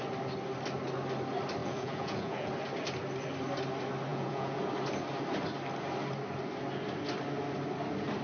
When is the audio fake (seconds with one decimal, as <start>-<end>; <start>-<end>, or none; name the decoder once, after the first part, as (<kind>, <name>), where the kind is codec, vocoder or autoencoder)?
1.6-2.5 (vocoder, Vocos); 4.1-4.6